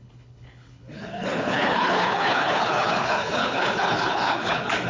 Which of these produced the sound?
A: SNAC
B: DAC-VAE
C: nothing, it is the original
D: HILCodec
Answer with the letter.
D